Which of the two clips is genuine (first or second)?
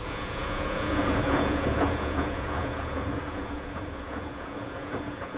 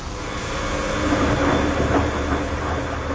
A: second